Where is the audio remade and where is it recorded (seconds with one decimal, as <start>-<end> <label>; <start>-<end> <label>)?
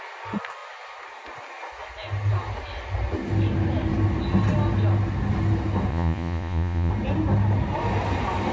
0.0-5.9 recorded; 5.9-6.9 remade; 6.9-8.5 recorded